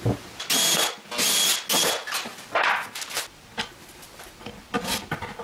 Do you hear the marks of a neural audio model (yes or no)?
no